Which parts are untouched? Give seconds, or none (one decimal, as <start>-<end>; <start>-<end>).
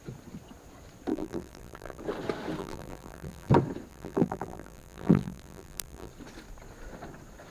0.0-1.1; 2.0-2.6; 3.5-3.9; 6.1-7.5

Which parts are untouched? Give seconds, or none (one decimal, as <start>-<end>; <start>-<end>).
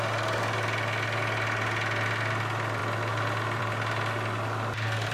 0.0-5.1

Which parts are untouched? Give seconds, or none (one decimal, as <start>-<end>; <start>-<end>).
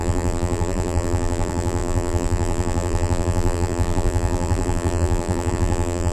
none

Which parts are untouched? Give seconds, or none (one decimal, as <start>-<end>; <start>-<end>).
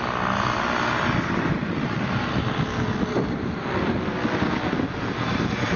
0.0-1.6; 3.9-5.8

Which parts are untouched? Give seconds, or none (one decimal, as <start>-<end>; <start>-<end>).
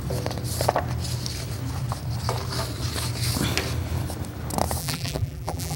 0.0-4.8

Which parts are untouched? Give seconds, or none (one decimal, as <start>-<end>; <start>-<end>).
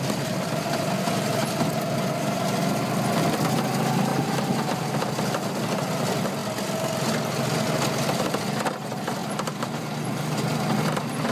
0.0-4.1; 5.1-11.3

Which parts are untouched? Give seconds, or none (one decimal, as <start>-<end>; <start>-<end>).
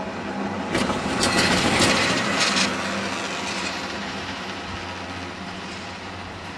2.7-3.5; 4.7-5.3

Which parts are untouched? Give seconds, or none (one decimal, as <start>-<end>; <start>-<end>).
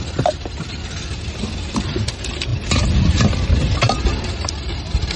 0.0-5.2